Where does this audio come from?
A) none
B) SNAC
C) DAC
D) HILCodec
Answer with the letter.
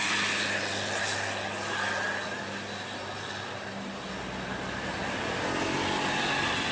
A